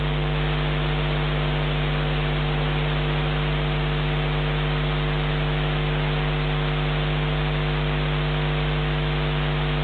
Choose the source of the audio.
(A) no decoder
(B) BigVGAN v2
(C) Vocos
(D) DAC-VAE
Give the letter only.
A